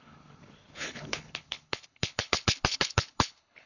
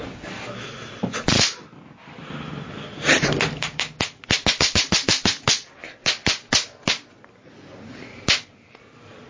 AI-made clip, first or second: first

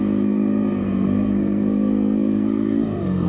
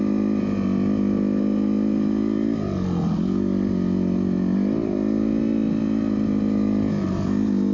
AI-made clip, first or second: first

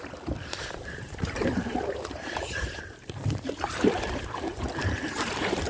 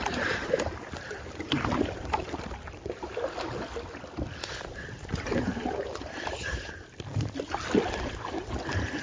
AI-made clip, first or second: first